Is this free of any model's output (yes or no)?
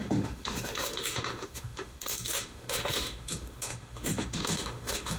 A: no